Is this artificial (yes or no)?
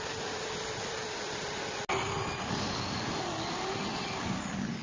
no